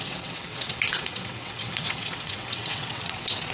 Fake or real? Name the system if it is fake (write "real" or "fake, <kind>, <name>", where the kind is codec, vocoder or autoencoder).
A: fake, vocoder, WaveNeXt